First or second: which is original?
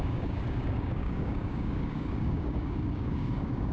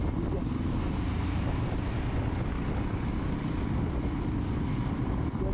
second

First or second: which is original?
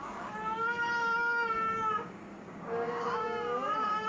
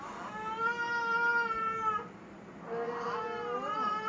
second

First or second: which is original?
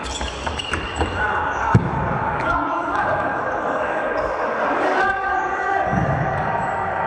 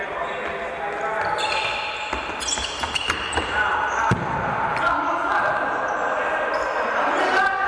second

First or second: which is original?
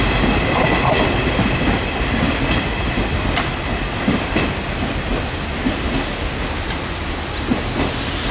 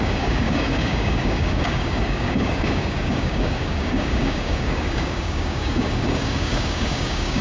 first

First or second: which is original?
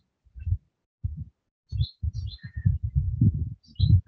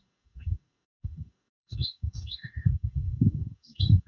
first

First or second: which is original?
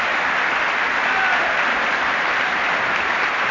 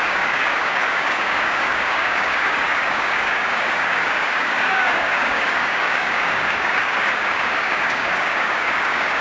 first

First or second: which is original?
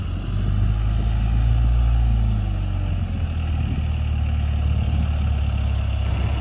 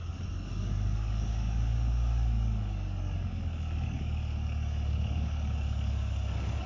first